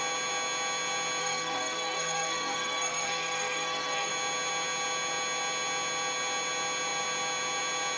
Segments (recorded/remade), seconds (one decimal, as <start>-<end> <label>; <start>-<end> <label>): 0.0-1.2 recorded; 1.2-4.1 remade; 4.1-8.0 recorded